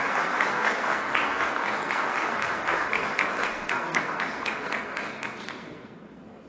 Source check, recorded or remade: remade